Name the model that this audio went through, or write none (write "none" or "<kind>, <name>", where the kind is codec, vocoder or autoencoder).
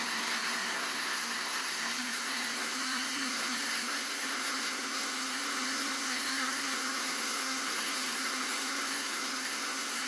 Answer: codec, SNAC